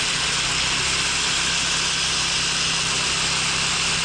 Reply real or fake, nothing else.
real